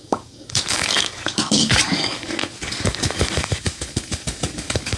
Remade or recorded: remade